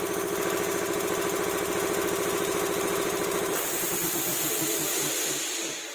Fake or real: real